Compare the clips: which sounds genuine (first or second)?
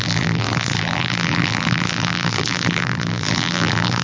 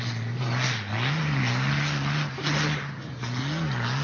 second